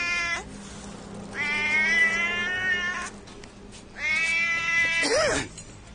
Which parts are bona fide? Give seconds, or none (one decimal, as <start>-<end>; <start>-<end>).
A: 0.0-5.9